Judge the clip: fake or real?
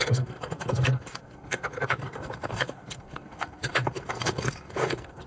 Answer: fake